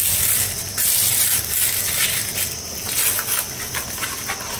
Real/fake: real